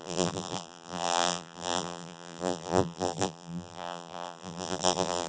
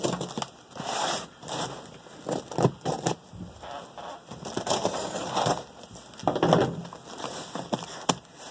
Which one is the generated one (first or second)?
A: first